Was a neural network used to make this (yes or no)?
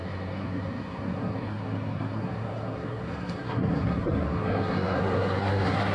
yes